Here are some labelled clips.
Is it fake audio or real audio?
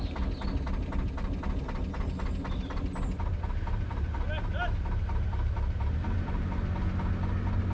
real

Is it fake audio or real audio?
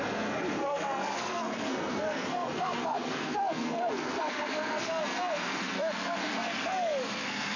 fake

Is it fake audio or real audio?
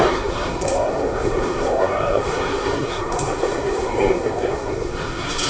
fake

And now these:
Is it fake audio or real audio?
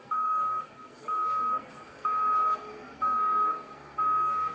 fake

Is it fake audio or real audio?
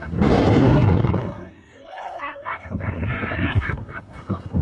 fake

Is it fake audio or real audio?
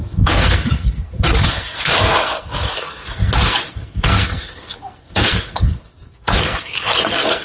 fake